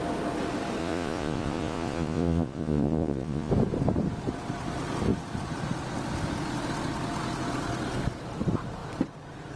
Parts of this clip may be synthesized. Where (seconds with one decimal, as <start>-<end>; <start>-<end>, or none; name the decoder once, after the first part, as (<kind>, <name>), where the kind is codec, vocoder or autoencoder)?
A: 0.8-3.5 (vocoder, Vocos)

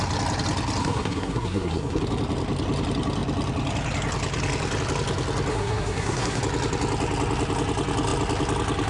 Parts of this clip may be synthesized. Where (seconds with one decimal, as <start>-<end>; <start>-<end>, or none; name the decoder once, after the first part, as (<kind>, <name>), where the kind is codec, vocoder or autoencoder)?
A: 0.8-2.0 (codec, SNAC); 5.5-6.4